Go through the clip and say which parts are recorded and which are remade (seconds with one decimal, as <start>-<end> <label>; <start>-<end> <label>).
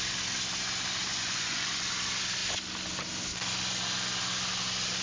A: 0.0-1.1 recorded; 1.1-1.8 remade; 1.8-5.0 recorded